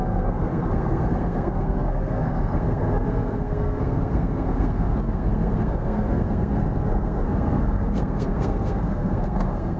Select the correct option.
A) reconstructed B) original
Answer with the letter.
A